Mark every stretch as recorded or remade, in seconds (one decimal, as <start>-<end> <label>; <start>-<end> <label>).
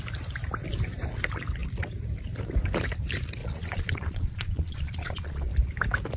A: 0.0-3.4 recorded; 3.4-5.5 remade; 5.5-6.2 recorded